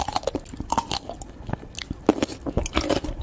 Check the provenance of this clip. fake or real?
real